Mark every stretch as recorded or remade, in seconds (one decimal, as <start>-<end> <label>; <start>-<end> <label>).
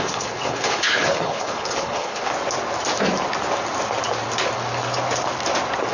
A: 0.0-2.3 remade; 2.3-5.9 recorded